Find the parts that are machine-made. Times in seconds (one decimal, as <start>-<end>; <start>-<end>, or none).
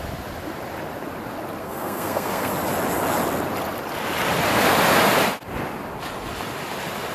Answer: 1.6-2.5